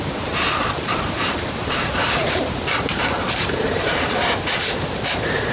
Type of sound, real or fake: fake